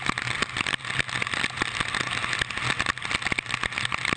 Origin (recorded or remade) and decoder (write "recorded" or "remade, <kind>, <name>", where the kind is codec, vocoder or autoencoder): recorded